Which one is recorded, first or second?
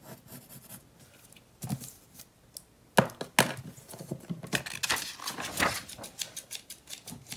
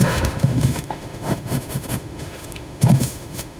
first